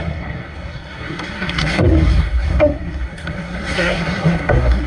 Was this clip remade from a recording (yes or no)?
yes